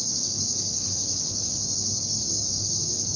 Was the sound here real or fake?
fake